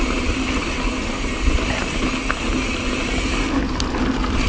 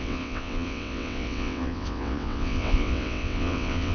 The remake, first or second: second